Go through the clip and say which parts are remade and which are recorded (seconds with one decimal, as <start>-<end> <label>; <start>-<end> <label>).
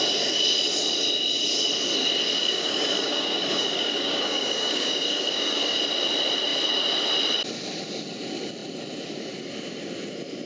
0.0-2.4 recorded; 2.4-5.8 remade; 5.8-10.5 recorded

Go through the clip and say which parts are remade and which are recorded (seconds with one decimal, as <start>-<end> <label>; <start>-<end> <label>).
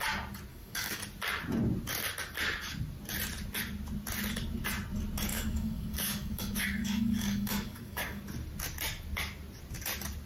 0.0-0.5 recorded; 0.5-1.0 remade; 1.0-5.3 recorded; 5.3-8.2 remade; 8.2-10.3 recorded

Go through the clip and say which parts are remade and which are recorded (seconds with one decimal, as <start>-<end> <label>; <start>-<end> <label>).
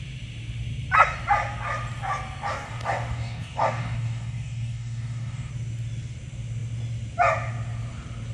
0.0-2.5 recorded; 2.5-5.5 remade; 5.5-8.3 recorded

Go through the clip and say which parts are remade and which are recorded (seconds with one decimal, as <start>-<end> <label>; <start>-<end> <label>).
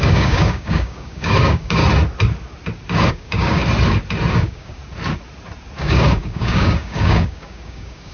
0.0-1.8 remade; 1.8-3.1 recorded; 3.1-3.6 remade; 3.6-4.3 recorded; 4.3-4.8 remade; 4.8-5.8 recorded; 5.8-8.1 remade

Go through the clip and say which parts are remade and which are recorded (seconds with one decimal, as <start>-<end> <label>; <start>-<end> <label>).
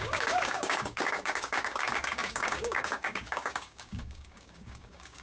0.0-5.2 remade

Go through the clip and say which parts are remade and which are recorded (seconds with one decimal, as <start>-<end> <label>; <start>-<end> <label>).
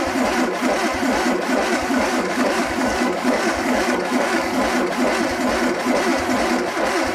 0.0-1.7 recorded; 1.7-4.6 remade; 4.6-7.1 recorded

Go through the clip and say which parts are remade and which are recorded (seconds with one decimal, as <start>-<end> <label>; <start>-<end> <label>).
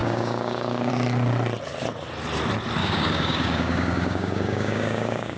0.0-0.9 remade; 0.9-2.8 recorded; 2.8-5.4 remade